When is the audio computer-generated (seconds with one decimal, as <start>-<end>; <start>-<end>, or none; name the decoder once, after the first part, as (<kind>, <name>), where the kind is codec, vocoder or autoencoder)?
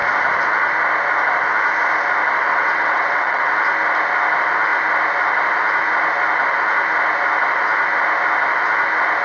2.5-3.5 (vocoder, WaveNeXt)